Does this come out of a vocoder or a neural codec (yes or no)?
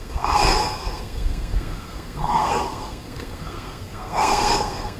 yes